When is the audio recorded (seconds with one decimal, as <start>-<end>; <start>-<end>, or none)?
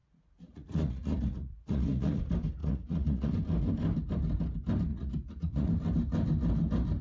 2.2-2.6; 3.3-4.9; 5.7-7.0